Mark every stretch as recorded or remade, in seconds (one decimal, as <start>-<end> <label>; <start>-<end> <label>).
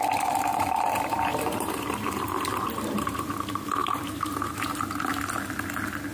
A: 0.0-0.5 recorded; 0.5-3.3 remade; 3.3-3.8 recorded; 3.8-5.1 remade; 5.1-6.1 recorded